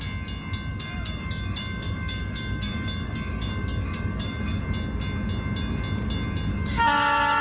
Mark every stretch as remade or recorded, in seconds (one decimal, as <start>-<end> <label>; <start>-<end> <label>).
0.0-0.7 recorded; 0.7-4.6 remade; 4.6-6.5 recorded; 6.5-7.4 remade